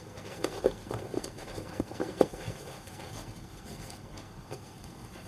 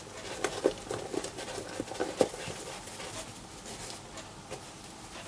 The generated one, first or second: first